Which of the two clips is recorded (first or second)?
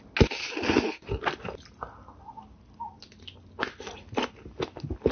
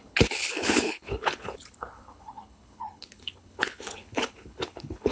first